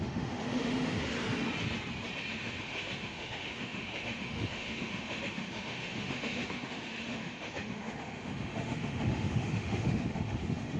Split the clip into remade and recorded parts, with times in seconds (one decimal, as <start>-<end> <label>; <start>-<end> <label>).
0.0-1.0 remade; 1.0-2.3 recorded; 2.3-10.8 remade